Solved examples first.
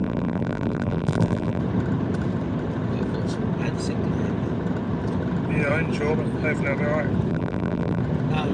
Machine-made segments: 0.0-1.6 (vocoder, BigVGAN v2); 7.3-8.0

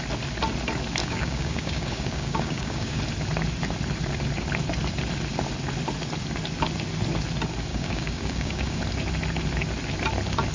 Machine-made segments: 1.0-3.0 (codec, DAC); 7.7-8.8